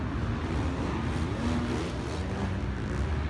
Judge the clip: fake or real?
real